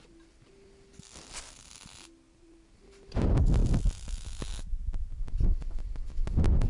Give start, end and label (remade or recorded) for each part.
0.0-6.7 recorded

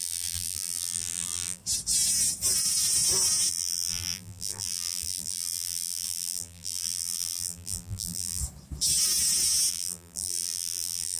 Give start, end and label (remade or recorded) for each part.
0.0-1.6 remade; 1.6-3.5 recorded; 3.5-8.4 remade; 8.4-9.7 recorded; 9.7-11.2 remade

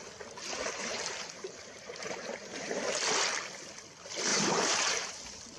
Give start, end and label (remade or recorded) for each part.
0.0-0.8 recorded; 0.8-3.0 remade; 3.0-4.3 recorded; 4.3-5.1 remade; 5.1-5.6 recorded

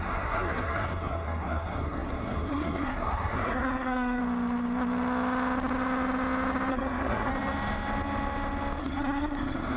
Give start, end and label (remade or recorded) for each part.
0.0-4.2 remade; 4.2-6.7 recorded; 6.7-7.3 remade; 7.3-8.8 recorded; 8.8-9.8 remade

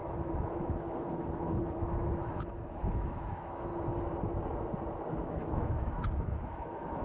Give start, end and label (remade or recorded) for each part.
0.0-3.7 remade; 3.7-5.1 recorded; 5.1-7.0 remade

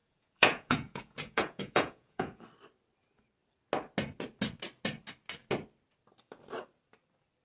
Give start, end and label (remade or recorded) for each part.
0.0-2.4 remade; 2.4-7.4 recorded

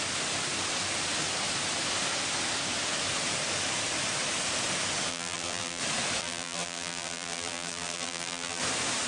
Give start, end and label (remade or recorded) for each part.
0.0-5.1 recorded; 5.1-5.8 remade; 5.8-6.2 recorded; 6.2-8.6 remade; 8.6-9.1 recorded